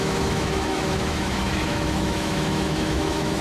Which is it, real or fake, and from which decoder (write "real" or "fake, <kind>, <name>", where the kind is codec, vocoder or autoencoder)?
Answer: fake, autoencoder, DAC-VAE